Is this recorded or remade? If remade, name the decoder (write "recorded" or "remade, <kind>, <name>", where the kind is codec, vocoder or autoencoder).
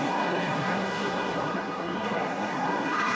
remade, codec, SNAC